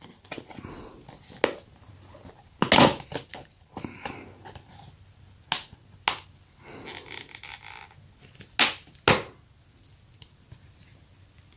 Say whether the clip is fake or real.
real